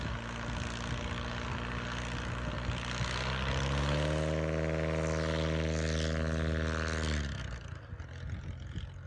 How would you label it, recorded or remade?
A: recorded